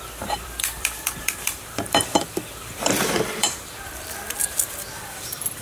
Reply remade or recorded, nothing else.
remade